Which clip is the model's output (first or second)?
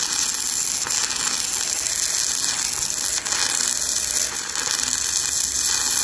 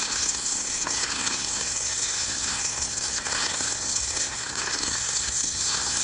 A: second